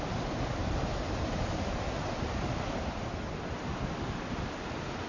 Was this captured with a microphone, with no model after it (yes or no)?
yes